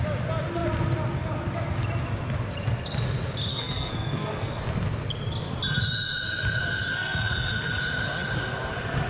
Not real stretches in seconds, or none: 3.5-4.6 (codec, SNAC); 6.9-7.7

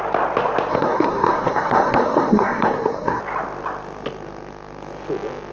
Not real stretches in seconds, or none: 0.7-3.2 (codec, SNAC)

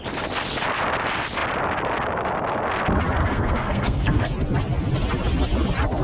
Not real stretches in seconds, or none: 3.2-4.3 (codec, SNAC)

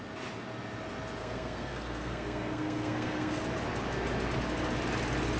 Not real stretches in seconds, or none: 1.2-3.4 (codec, SNAC)

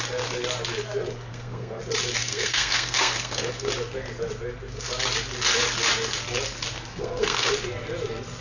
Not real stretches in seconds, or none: 1.3-1.8 (codec, SNAC); 2.2-3.7; 6.9-7.5